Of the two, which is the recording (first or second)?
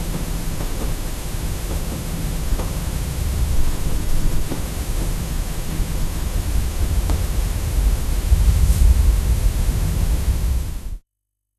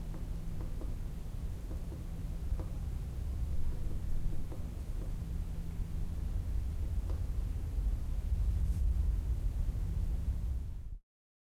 second